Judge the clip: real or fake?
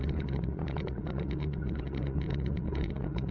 fake